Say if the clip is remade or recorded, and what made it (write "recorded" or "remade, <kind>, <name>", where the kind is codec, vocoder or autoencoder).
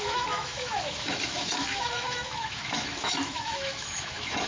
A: remade, autoencoder, DAC-VAE